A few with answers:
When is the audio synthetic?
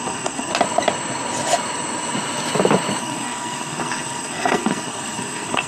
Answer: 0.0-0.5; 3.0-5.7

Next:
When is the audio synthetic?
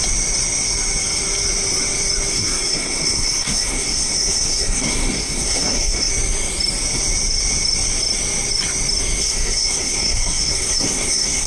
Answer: 2.3-6.1; 9.2-11.5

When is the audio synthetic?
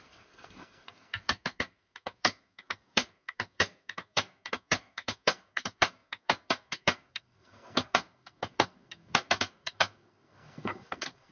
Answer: 0.0-11.3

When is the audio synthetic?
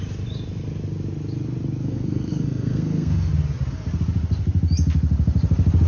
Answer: 1.8-3.3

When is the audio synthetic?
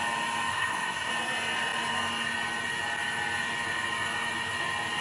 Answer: 0.5-1.1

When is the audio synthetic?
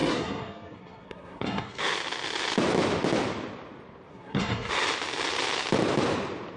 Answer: 0.0-1.8; 4.1-4.7